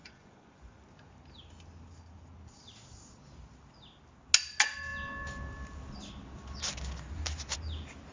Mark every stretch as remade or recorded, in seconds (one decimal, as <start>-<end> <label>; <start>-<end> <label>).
0.0-0.8 remade; 0.8-8.1 recorded